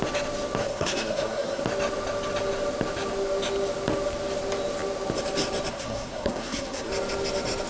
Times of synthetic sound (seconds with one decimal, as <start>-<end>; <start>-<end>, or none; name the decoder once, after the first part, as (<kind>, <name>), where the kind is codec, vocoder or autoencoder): 0.6-1.6 (codec, SNAC); 5.7-6.9